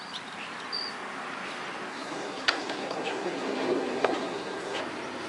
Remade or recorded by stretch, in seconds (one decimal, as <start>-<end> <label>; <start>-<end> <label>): 0.0-1.9 recorded; 1.9-4.8 remade; 4.8-5.3 recorded